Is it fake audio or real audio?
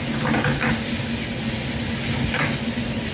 real